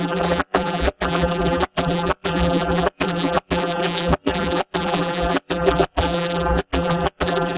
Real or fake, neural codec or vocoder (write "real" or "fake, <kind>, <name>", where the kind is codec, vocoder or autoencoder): fake, vocoder, BigVGAN v2